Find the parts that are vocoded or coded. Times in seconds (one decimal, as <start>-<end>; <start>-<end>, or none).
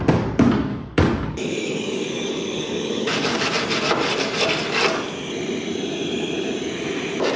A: 0.7-3.4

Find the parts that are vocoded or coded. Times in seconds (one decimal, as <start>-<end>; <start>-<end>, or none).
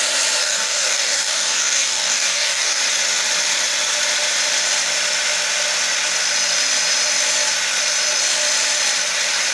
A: 0.4-2.8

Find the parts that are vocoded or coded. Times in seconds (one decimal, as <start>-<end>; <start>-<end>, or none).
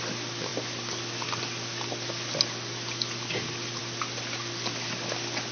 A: none